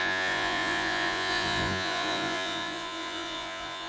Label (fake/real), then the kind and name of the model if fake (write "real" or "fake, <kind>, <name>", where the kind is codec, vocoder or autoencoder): fake, vocoder, Vocos